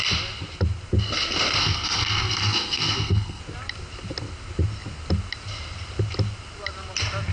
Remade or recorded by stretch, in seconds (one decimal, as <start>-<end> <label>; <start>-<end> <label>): 0.0-1.6 recorded; 1.6-3.4 remade; 3.4-7.3 recorded